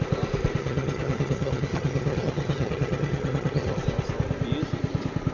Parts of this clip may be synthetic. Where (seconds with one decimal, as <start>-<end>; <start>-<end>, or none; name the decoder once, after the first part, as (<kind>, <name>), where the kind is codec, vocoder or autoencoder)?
0.6-3.8 (vocoder, HiFi-GAN)